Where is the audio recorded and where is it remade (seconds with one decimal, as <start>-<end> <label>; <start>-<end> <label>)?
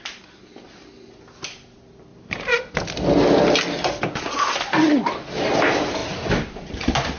0.0-2.1 recorded; 2.1-2.7 remade; 2.7-6.0 recorded; 6.0-6.7 remade; 6.7-7.2 recorded